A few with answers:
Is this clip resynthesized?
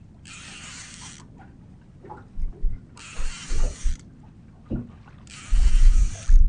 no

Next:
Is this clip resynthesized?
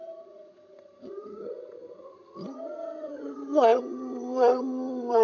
yes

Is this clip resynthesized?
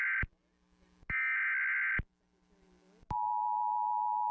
no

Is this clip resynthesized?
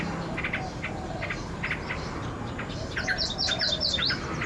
no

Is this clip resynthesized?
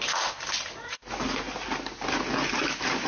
no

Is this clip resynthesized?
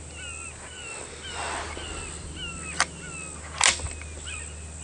no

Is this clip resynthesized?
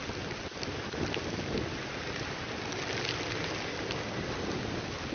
no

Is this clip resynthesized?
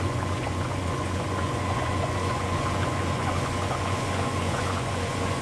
yes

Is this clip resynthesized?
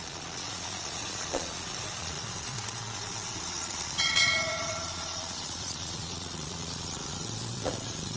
yes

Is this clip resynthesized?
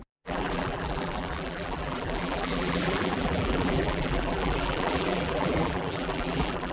yes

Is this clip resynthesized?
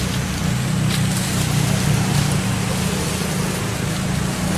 no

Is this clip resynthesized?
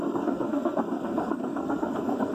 yes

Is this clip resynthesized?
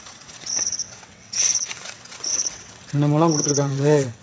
yes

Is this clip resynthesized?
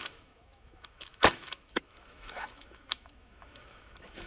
yes